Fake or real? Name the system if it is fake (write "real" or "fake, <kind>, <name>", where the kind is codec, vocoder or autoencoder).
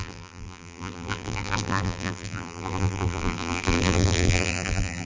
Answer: fake, vocoder, BigVGAN v2